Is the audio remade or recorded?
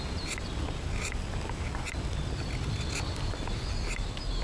recorded